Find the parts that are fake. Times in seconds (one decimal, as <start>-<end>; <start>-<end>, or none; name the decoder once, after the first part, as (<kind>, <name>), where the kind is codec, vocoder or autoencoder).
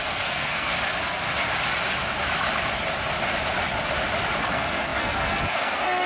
0.0-0.7 (codec, SNAC); 4.4-6.1